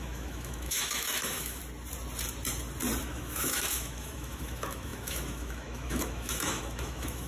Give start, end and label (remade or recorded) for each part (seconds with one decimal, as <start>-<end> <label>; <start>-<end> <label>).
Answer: 0.0-1.6 remade; 1.6-3.0 recorded; 3.0-7.3 remade